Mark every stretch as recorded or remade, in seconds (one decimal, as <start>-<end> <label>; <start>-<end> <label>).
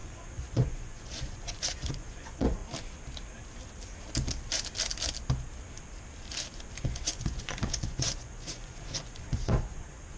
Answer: 0.0-2.6 remade; 2.6-6.8 recorded; 6.8-10.2 remade